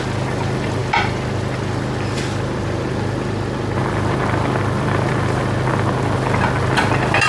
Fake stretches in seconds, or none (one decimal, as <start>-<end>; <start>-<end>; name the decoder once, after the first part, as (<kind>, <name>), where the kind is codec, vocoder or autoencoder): none